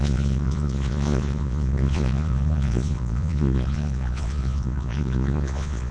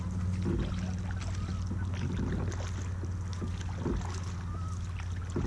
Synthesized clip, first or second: first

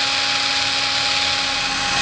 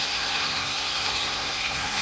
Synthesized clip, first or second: second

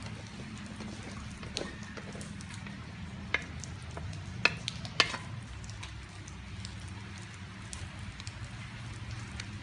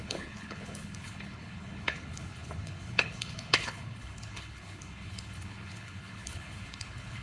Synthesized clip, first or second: second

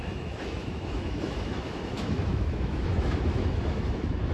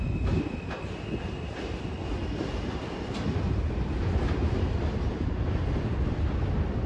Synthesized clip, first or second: first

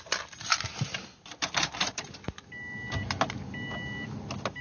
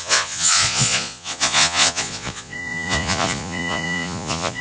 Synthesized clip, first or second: second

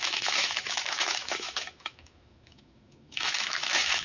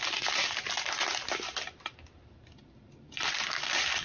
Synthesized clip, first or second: first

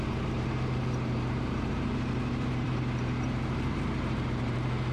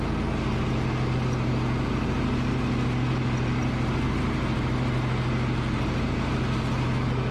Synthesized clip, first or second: first